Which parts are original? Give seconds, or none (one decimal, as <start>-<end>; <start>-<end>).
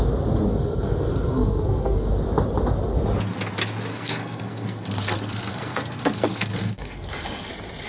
0.0-0.5; 2.1-3.9; 7.5-7.9